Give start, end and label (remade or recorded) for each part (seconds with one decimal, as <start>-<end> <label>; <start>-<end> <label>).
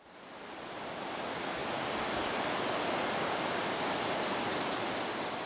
0.0-5.5 recorded